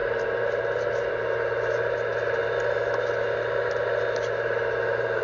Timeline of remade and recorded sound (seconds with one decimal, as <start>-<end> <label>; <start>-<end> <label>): 0.0-5.2 recorded